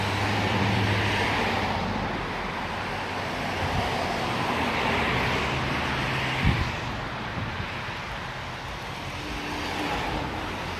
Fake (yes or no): yes